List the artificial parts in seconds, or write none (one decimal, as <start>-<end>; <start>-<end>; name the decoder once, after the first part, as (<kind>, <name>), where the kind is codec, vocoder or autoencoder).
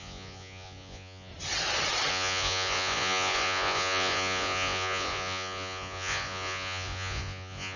0.0-1.3 (vocoder, Vocos); 2.1-7.8